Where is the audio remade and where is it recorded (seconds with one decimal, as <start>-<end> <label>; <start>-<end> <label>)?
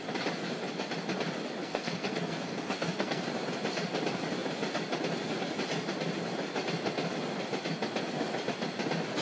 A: 0.0-1.6 recorded; 1.6-3.2 remade; 3.2-9.2 recorded